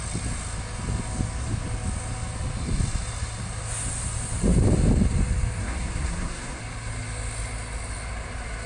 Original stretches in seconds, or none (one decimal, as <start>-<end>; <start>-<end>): 0.0-5.6; 6.6-8.7